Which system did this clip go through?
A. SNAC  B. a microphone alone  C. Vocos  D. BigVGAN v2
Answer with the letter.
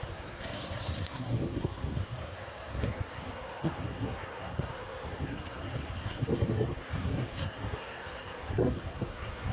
A